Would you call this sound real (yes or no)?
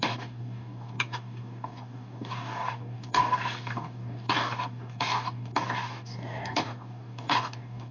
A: no